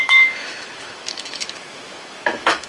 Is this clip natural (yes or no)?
no